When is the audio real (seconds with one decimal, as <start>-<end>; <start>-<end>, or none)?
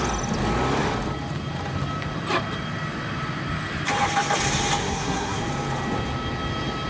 0.0-4.8; 5.4-6.9